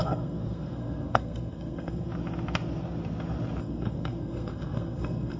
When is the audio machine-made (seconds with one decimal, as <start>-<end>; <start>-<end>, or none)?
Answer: 0.0-2.1; 3.6-5.4